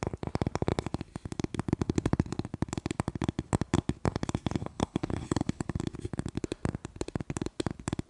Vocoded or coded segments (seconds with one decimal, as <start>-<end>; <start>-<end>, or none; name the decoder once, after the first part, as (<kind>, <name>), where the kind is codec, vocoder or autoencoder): 4.6-5.8 (codec, HILCodec)